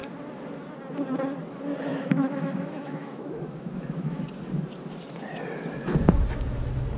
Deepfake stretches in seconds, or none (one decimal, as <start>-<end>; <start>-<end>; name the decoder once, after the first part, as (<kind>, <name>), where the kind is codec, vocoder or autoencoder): 1.9-4.2 (autoencoder, DAC-VAE)